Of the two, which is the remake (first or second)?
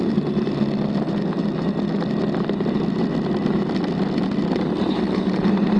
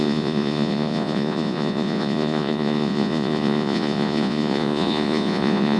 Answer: second